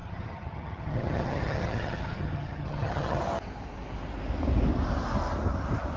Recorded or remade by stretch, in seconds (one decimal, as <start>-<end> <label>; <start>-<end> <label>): 0.0-3.2 remade; 3.2-6.0 recorded